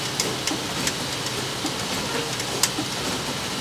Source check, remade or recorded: recorded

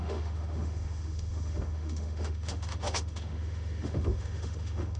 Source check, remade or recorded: remade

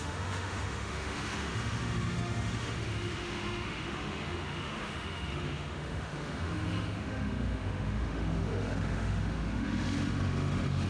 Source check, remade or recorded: remade